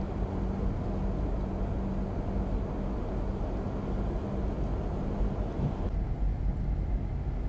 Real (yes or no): yes